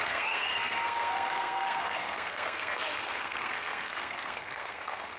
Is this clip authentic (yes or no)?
no